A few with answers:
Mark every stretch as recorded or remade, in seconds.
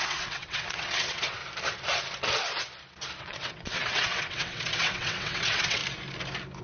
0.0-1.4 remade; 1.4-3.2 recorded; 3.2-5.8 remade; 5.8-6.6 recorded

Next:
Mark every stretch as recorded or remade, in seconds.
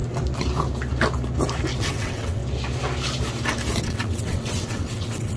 0.0-1.8 recorded; 1.8-2.4 remade; 2.4-3.8 recorded; 3.8-5.4 remade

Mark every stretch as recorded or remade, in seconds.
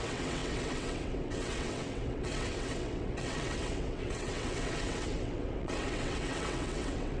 0.0-7.2 remade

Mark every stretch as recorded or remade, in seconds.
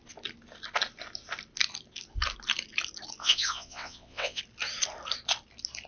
0.0-3.2 recorded; 3.2-4.4 remade; 4.4-5.9 recorded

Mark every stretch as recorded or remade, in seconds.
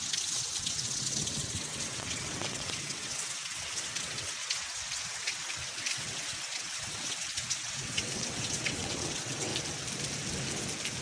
0.0-9.5 remade; 9.5-11.0 recorded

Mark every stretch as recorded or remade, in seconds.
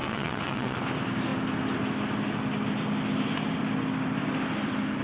0.0-0.8 remade; 0.8-5.0 recorded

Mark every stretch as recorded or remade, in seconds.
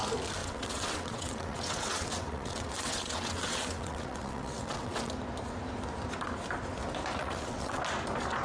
0.0-0.4 recorded; 0.4-5.1 remade; 5.1-7.2 recorded; 7.2-7.8 remade; 7.8-8.4 recorded